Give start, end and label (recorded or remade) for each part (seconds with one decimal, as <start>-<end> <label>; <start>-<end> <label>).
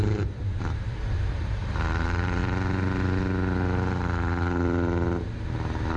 0.0-2.4 remade; 2.4-6.0 recorded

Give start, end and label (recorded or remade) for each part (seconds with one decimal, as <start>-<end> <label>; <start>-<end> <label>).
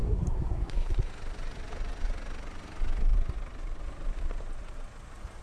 0.0-1.1 remade; 1.1-5.4 recorded